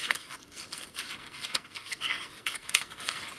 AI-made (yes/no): yes